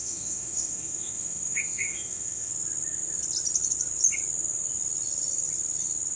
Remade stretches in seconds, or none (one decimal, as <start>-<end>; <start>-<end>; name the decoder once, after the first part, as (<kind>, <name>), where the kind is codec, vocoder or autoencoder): 0.0-2.5 (autoencoder, DAC-VAE)